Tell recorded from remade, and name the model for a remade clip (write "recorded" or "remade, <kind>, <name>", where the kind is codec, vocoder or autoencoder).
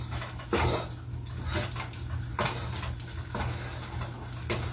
recorded